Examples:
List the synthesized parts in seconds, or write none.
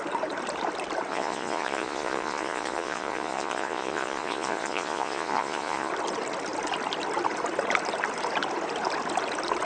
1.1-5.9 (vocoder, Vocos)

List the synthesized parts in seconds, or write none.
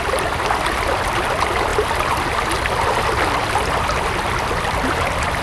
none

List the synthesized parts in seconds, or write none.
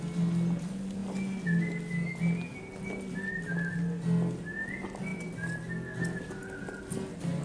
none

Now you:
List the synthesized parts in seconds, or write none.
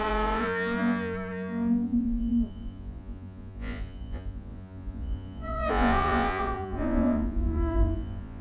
0.0-8.4 (vocoder, Vocos)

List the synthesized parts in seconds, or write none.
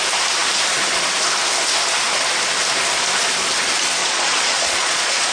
4.0-5.3 (vocoder, Vocos)